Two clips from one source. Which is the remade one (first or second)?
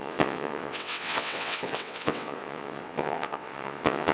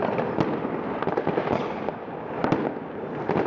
first